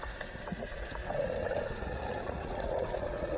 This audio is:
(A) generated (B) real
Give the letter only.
A